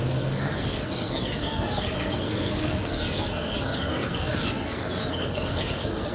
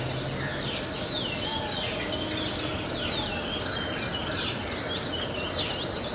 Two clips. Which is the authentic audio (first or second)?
second